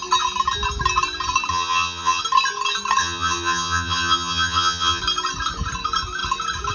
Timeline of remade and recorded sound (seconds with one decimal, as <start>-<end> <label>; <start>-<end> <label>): 0.0-1.5 recorded; 1.5-2.2 remade; 2.2-3.0 recorded; 3.0-5.0 remade; 5.0-6.7 recorded